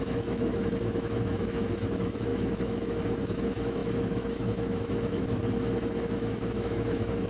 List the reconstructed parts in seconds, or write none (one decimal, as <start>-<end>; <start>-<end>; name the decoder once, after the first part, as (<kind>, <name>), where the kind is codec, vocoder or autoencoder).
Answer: 0.0-7.3 (autoencoder, DAC-VAE)